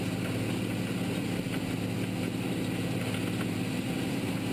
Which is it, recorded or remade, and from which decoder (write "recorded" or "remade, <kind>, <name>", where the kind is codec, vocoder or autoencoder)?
recorded